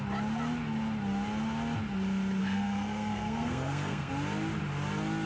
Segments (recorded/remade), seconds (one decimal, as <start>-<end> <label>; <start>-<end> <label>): 0.0-2.4 recorded; 2.4-4.1 remade; 4.1-5.3 recorded